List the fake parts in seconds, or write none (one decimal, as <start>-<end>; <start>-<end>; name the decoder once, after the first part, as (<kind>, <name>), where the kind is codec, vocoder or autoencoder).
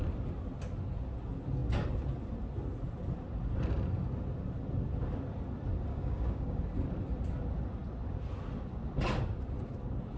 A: 5.9-6.6 (codec, DAC)